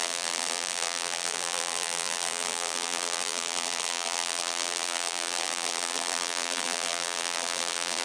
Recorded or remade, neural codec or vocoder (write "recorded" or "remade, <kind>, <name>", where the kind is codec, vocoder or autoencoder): remade, vocoder, BigVGAN v2